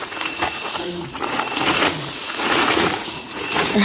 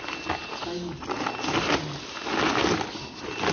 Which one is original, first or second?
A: second